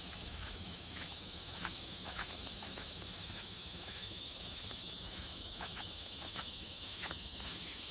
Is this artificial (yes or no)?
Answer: yes